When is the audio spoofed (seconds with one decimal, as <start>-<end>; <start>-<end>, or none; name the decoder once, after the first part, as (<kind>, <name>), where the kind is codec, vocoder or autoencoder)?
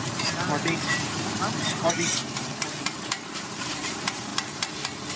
0.0-4.3 (vocoder, BigVGAN v2)